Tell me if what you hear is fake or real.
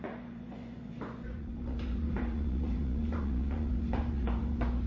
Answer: fake